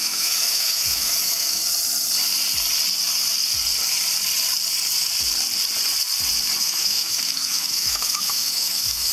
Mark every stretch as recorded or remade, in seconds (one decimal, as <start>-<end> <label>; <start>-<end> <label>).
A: 0.0-1.6 remade; 1.6-6.6 recorded; 6.6-9.1 remade